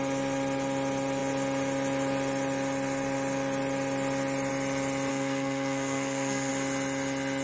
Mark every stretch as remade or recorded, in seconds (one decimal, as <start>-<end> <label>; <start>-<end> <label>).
0.0-5.1 recorded; 5.1-6.5 remade; 6.5-7.4 recorded

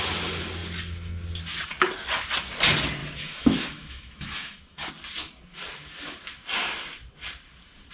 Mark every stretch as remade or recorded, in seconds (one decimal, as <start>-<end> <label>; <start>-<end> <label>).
0.0-3.0 recorded; 3.0-4.9 remade; 4.9-7.9 recorded

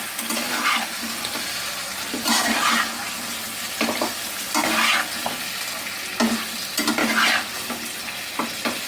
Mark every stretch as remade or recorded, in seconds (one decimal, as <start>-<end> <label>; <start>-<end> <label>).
0.0-8.9 recorded

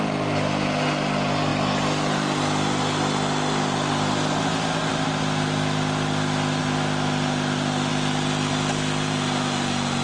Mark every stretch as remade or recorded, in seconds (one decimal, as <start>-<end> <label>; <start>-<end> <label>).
0.0-10.0 recorded

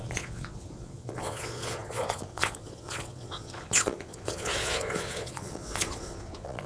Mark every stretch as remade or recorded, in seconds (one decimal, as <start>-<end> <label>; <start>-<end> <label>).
0.0-6.7 remade

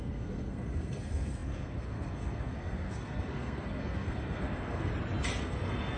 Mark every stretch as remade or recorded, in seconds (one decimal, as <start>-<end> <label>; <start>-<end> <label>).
0.0-4.9 remade; 4.9-5.4 recorded; 5.4-6.0 remade